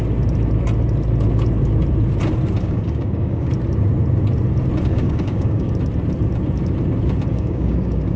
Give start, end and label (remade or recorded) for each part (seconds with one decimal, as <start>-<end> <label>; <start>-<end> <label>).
0.0-2.6 recorded; 2.6-3.5 remade; 3.5-4.9 recorded; 4.9-5.7 remade; 5.7-7.3 recorded; 7.3-8.2 remade